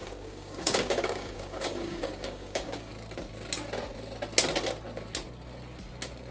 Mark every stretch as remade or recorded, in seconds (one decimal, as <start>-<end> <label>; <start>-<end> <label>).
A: 0.0-2.9 remade; 2.9-6.3 recorded